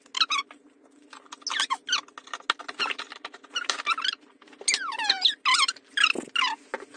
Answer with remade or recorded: recorded